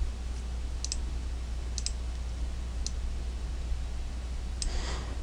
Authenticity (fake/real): real